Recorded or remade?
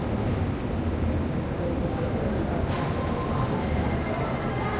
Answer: recorded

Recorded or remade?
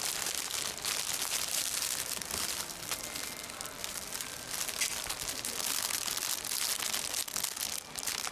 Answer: recorded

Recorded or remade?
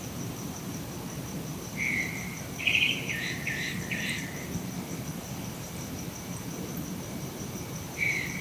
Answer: remade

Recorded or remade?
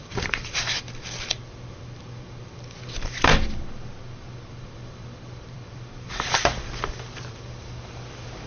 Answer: remade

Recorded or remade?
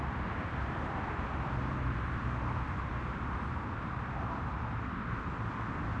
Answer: remade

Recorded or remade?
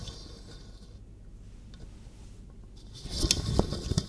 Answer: recorded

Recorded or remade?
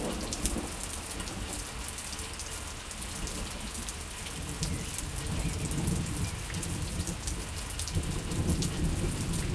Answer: recorded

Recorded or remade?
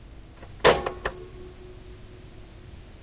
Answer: recorded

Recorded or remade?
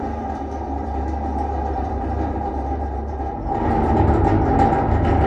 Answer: remade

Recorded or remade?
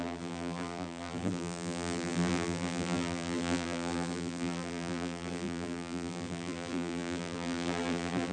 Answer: remade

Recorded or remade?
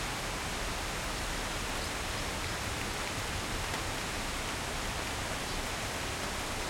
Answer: recorded